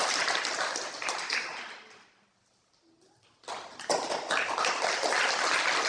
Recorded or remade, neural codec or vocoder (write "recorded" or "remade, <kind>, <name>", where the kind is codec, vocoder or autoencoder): recorded